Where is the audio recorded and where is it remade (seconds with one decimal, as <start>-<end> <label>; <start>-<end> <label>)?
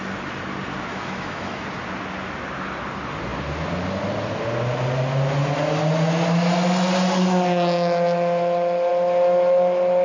0.0-0.9 recorded; 0.9-1.6 remade; 1.6-10.0 recorded